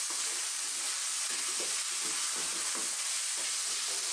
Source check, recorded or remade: recorded